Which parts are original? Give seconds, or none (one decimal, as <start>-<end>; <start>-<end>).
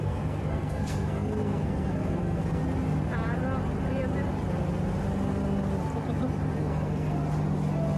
2.6-6.6; 7.2-8.0